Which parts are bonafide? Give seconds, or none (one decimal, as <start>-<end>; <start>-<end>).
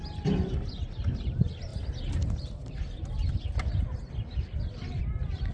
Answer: 0.0-5.5